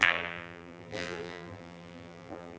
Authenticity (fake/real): fake